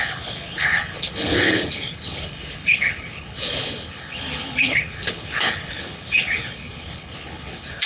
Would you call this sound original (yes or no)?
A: no